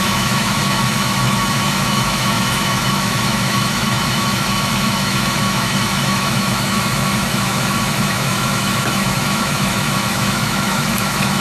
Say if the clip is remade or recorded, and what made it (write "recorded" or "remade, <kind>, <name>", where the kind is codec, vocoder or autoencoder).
remade, autoencoder, DAC-VAE